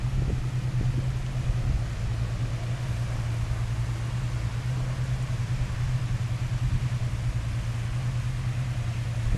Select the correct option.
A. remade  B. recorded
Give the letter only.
B